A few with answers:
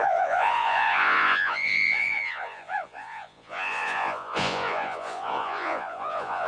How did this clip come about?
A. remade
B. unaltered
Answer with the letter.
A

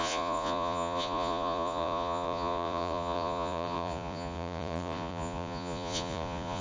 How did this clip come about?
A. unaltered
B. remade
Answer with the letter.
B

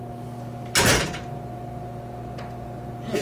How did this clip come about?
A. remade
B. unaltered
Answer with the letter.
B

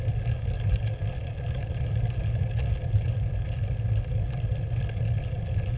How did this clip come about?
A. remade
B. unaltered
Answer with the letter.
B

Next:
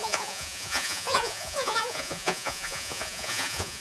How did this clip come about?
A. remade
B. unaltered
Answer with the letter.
A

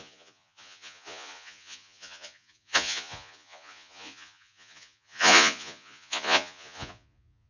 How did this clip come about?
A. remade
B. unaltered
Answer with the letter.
A